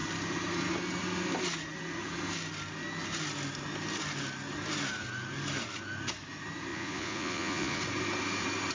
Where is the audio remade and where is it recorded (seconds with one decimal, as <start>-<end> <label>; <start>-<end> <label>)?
0.0-6.7 recorded; 6.7-7.8 remade; 7.8-8.7 recorded

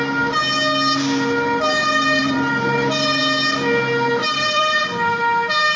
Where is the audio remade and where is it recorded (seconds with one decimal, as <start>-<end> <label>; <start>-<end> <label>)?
0.0-2.2 recorded; 2.2-3.2 remade; 3.2-4.2 recorded; 4.2-5.2 remade; 5.2-5.8 recorded